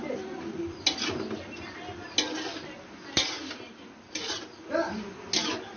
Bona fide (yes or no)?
yes